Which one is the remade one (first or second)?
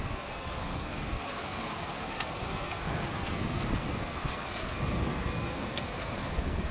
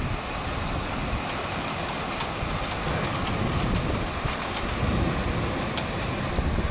first